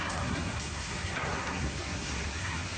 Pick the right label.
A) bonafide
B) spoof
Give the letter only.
B